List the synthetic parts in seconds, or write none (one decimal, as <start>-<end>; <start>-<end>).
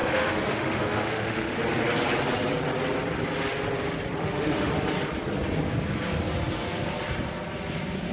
0.0-1.6; 4.2-4.7